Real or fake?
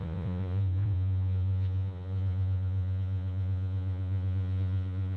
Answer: fake